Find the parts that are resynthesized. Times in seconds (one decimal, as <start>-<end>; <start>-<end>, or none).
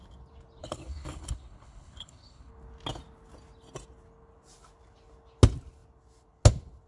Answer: 0.6-2.5